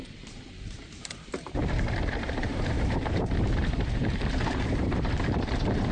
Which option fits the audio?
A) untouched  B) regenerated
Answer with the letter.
B